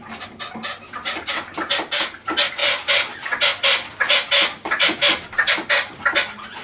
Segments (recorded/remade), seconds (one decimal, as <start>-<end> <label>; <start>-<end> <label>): 0.0-6.6 recorded